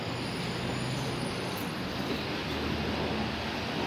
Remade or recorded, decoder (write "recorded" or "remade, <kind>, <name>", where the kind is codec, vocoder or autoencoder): recorded